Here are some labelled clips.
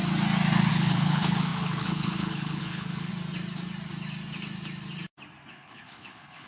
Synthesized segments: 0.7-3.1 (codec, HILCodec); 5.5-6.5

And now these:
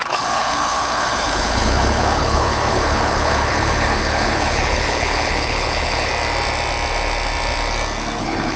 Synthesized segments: 0.0-6.1 (codec, HILCodec); 8.2-8.6

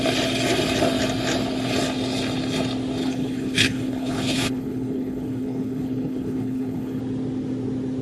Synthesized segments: 3.0-7.0 (codec, HILCodec)

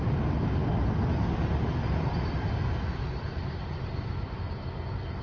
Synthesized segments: none